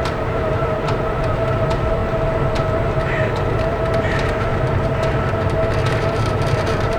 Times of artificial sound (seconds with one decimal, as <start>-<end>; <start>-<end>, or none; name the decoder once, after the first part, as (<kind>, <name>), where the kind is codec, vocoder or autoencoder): 0.0-2.0 (vocoder, BigVGAN v2); 3.2-4.5; 5.9-7.0